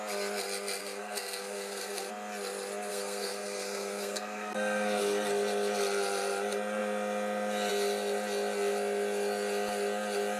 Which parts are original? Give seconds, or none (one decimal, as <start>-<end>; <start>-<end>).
0.0-0.8; 2.1-2.9; 5.0-10.4